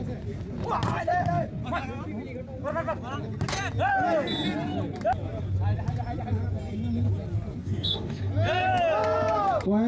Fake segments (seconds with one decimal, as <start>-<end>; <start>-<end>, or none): 7.6-8.3